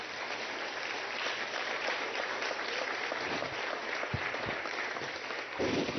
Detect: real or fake fake